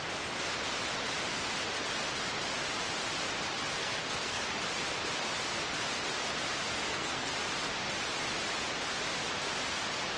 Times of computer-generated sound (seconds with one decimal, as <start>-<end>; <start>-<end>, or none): 3.8-4.4; 6.8-7.3